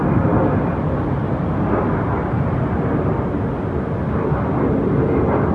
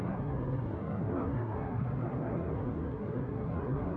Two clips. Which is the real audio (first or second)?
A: first